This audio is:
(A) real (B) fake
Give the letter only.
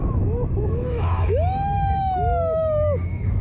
B